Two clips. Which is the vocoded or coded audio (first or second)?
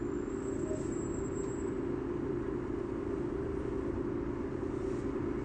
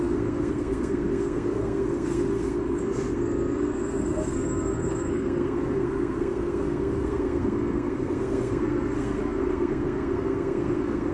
second